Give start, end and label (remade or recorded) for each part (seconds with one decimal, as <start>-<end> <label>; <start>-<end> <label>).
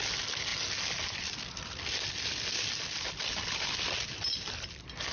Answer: 0.0-5.1 recorded